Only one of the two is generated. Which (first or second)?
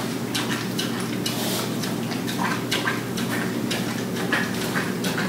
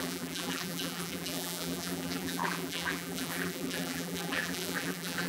second